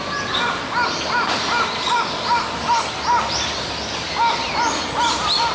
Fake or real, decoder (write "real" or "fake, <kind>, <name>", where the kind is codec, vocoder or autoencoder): real